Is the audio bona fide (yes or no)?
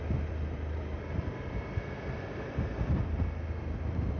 yes